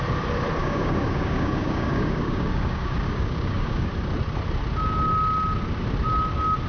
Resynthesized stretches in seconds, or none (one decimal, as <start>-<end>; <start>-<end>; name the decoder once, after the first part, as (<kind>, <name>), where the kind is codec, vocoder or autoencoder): 0.6-3.9 (codec, DAC)